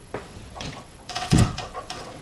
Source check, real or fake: fake